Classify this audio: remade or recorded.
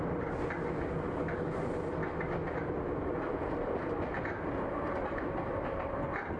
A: recorded